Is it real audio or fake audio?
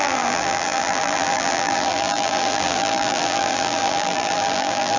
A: fake